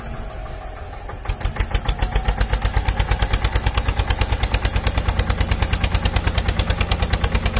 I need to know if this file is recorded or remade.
recorded